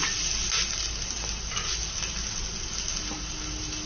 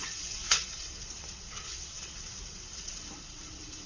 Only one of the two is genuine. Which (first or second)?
first